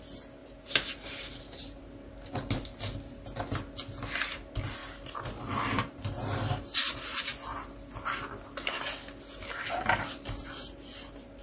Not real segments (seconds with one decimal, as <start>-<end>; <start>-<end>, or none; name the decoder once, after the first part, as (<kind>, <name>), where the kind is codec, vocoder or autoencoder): 0.4-1.8 (vocoder, BigVGAN v2)